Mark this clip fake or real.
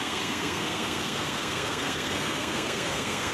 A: fake